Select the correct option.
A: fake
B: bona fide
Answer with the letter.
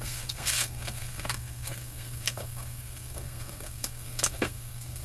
A